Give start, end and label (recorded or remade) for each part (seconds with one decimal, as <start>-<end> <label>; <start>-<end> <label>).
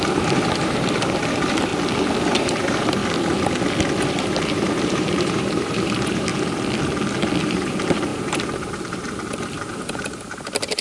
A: 0.0-1.7 remade; 1.7-2.2 recorded; 2.2-3.0 remade; 3.0-4.1 recorded; 4.1-6.3 remade; 6.3-7.4 recorded; 7.4-10.8 remade